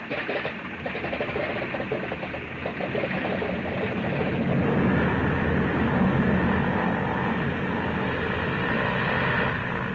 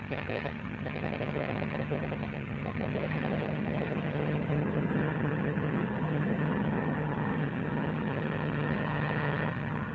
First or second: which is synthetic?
second